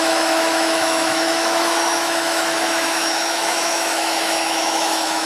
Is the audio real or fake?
fake